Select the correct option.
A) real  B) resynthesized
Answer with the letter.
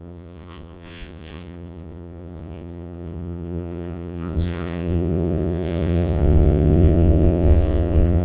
B